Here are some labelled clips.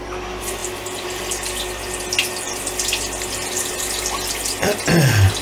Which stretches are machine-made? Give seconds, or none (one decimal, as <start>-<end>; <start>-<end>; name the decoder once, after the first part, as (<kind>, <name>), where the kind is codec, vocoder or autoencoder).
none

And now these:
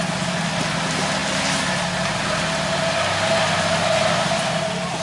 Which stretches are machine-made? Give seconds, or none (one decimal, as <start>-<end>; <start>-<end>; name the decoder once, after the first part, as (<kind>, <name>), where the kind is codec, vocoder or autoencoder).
none

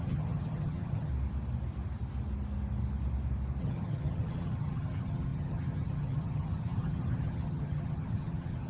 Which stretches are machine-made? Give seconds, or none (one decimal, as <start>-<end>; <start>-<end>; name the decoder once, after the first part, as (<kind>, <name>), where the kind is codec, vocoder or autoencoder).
0.0-1.1 (vocoder, HiFi-GAN); 3.6-8.7